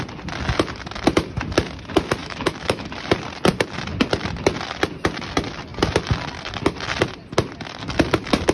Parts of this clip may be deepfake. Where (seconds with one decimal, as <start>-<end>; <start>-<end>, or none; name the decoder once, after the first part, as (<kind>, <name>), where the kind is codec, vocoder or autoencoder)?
2.2-2.9 (autoencoder, DAC-VAE)